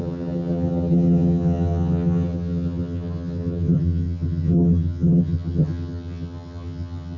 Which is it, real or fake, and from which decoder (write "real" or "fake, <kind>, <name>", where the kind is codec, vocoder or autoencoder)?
fake, vocoder, HiFi-GAN